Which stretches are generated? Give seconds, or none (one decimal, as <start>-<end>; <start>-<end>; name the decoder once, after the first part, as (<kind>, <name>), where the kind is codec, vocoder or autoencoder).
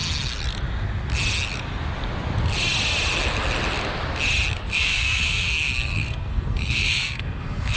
4.7-7.8 (codec, SNAC)